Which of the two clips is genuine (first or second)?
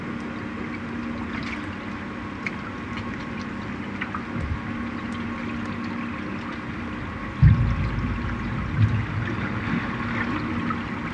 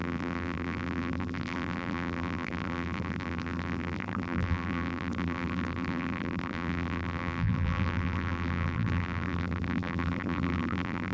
first